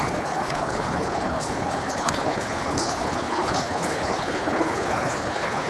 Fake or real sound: fake